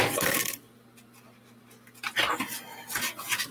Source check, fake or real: real